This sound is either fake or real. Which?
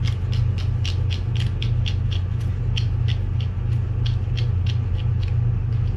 real